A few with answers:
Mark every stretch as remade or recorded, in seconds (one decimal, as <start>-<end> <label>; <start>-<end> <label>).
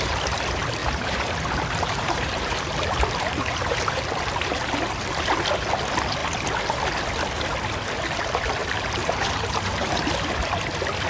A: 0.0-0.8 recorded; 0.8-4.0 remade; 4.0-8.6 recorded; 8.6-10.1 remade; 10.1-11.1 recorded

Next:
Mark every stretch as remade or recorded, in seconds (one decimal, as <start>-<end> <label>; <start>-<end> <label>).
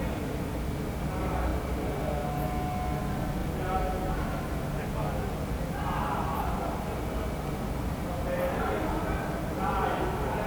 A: 0.0-10.5 recorded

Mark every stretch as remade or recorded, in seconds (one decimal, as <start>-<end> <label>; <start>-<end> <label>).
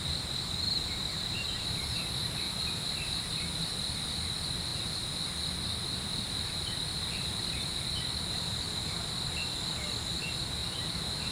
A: 0.0-1.0 recorded; 1.0-3.6 remade; 3.6-10.6 recorded; 10.6-11.3 remade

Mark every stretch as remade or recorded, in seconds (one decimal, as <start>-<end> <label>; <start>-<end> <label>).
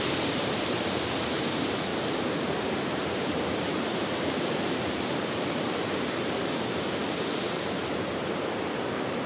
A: 0.0-9.3 remade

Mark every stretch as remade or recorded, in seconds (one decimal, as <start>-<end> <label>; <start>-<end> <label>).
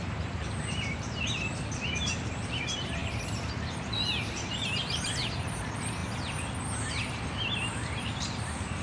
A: 0.0-6.0 remade; 6.0-6.9 recorded; 6.9-8.8 remade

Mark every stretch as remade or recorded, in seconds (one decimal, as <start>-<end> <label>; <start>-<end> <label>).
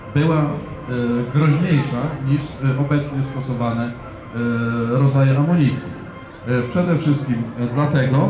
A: 0.0-0.5 recorded; 0.5-1.1 remade; 1.1-2.5 recorded; 2.5-5.7 remade; 5.7-8.3 recorded